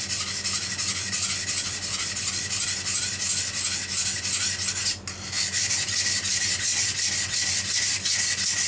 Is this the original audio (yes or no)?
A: yes